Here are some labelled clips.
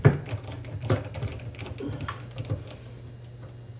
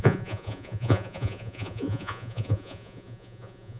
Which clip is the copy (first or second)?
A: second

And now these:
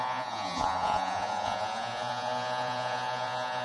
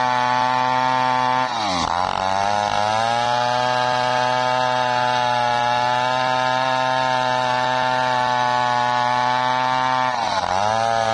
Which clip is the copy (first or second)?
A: first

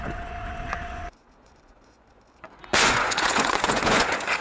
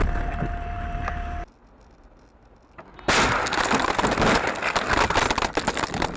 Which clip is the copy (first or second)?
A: first